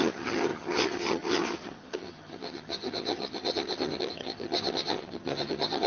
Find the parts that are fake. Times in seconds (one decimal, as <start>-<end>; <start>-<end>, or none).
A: 0.0-5.9